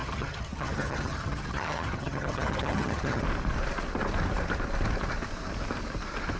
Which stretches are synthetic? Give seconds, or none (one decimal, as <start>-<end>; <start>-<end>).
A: 0.0-3.2